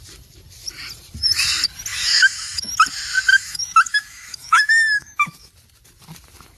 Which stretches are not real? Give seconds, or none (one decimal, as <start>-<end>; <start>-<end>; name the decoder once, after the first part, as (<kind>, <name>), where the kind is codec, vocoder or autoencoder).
1.9-2.7 (autoencoder, DAC-VAE); 3.3-5.5